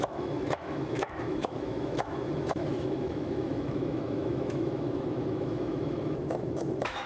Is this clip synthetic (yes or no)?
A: yes